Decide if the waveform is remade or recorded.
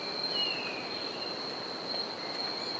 recorded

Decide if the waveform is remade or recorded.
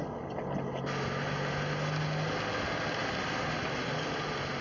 recorded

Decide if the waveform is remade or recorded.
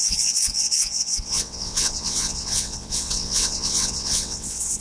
remade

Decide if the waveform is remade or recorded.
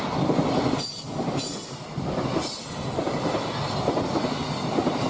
recorded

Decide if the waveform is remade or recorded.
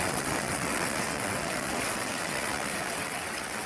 remade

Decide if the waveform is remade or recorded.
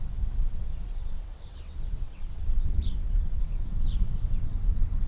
remade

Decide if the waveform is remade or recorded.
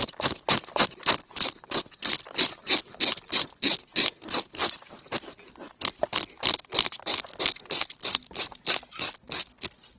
recorded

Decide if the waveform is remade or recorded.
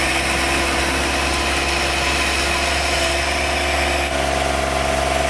recorded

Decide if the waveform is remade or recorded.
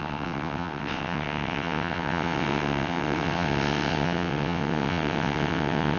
remade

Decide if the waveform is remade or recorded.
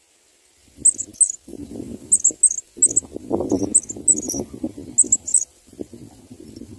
recorded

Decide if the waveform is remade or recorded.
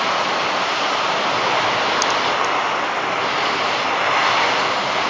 recorded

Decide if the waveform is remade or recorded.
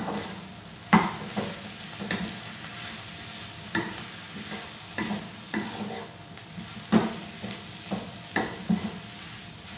recorded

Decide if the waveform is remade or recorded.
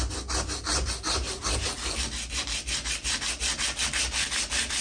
recorded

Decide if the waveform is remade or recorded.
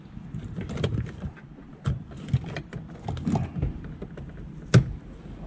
recorded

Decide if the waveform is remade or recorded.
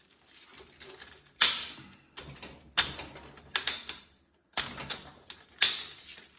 recorded